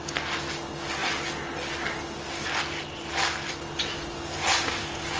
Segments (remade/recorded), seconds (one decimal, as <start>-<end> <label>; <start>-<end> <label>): 0.0-4.5 recorded; 4.5-5.2 remade